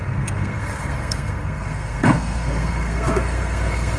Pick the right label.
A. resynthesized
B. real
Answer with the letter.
A